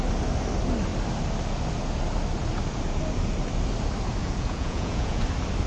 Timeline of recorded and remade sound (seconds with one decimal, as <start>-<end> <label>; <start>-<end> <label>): 0.0-4.2 recorded; 4.2-5.2 remade; 5.2-5.7 recorded